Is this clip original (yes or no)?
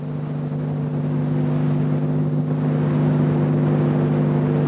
yes